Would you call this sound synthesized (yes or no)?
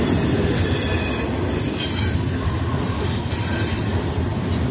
no